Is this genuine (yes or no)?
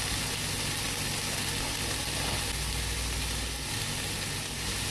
yes